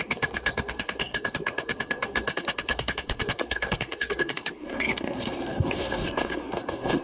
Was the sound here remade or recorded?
remade